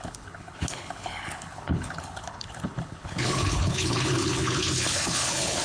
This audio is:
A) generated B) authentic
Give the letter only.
A